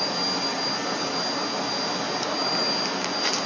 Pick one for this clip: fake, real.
real